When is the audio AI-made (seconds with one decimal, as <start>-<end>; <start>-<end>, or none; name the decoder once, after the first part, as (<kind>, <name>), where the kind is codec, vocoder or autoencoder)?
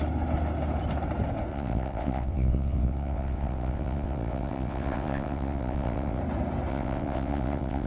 1.5-6.2 (vocoder, WaveNeXt); 6.7-7.9